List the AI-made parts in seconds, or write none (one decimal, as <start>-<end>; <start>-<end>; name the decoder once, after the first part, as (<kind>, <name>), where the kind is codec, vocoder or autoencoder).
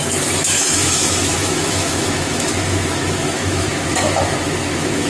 0.0-5.1 (autoencoder, DAC-VAE)